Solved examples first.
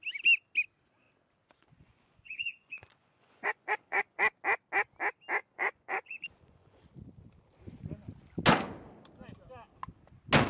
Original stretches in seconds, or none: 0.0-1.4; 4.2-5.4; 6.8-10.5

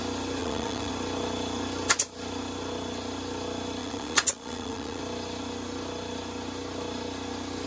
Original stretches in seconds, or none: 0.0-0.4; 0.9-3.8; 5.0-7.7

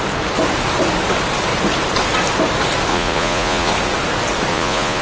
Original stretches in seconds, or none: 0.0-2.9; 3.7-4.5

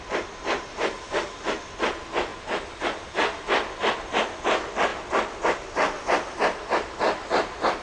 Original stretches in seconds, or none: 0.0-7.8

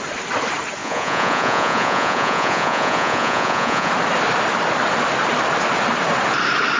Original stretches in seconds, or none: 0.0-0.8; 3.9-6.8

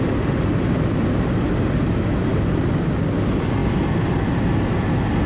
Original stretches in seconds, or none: 0.0-5.3